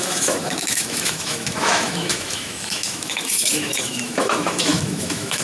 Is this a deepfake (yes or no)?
yes